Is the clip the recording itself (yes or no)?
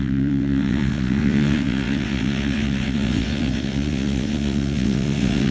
no